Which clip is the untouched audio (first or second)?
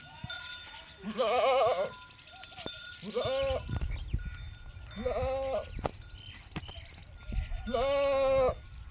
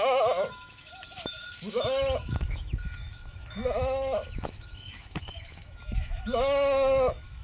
first